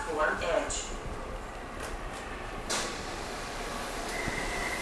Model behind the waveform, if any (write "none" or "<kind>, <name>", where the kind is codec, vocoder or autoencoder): vocoder, BigVGAN v2